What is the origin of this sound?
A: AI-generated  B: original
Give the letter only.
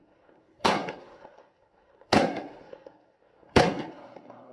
A